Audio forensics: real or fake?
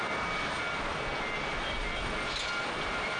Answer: real